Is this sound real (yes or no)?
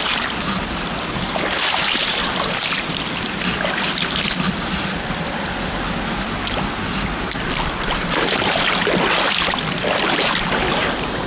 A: yes